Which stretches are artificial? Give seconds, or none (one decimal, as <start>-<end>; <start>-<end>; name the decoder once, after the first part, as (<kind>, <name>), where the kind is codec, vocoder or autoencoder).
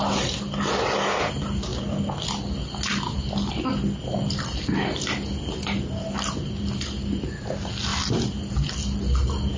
none